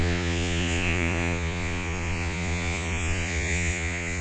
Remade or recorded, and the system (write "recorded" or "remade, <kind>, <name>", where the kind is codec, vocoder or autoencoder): remade, vocoder, Vocos